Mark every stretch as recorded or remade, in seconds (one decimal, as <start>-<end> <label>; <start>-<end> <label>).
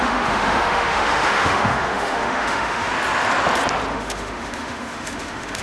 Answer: 0.0-2.9 remade; 2.9-3.9 recorded; 3.9-5.6 remade